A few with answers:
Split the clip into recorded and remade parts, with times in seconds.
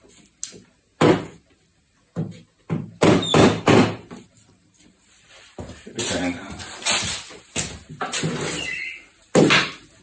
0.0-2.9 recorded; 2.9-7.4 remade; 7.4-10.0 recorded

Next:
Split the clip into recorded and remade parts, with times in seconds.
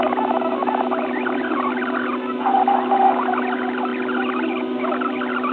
0.0-5.5 recorded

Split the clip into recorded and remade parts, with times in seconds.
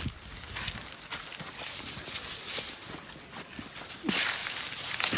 0.0-4.4 recorded; 4.4-5.2 remade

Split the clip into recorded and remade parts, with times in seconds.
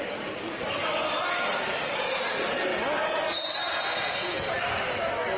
0.0-0.8 remade; 0.8-1.5 recorded; 1.5-2.7 remade; 2.7-3.2 recorded; 3.2-3.6 remade; 3.6-5.4 recorded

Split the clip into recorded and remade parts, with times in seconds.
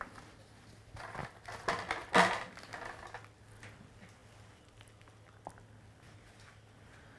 0.0-7.2 recorded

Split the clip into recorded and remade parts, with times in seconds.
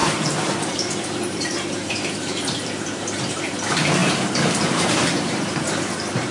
0.0-6.3 remade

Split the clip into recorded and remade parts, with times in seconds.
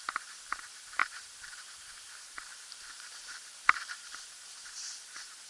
0.0-5.5 remade